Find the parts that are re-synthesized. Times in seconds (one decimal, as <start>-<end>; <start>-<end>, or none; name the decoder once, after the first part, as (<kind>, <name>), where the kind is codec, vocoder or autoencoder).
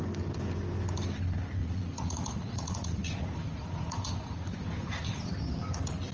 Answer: 1.6-5.3 (vocoder, Vocos)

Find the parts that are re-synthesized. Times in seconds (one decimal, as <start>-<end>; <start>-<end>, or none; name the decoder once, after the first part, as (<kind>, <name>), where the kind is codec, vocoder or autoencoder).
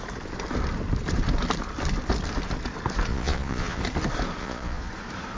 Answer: 3.1-3.8 (vocoder, Vocos); 4.4-4.9